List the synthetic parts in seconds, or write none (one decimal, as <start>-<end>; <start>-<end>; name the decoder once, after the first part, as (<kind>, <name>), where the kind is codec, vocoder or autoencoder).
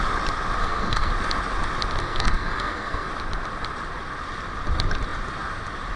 0.6-1.1 (codec, SNAC); 2.0-3.1